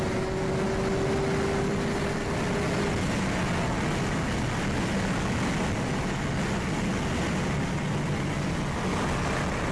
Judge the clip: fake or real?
real